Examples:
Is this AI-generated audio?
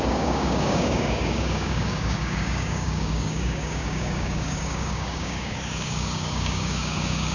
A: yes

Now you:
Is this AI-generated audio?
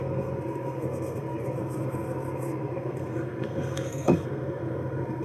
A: yes